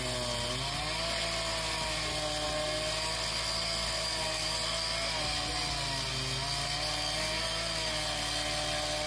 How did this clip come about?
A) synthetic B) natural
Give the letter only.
B